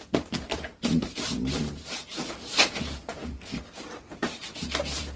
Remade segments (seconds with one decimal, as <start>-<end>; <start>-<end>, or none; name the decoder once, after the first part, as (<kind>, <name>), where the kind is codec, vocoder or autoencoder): 0.8-1.6 (vocoder, BigVGAN v2)